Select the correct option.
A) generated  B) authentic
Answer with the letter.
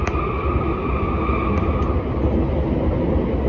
B